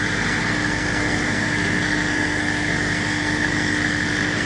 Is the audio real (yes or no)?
no